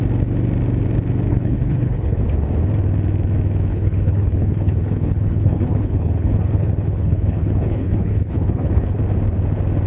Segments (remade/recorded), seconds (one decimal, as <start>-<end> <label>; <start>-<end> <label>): 0.0-1.3 recorded; 1.3-2.2 remade; 2.2-3.7 recorded; 3.7-9.0 remade; 9.0-9.9 recorded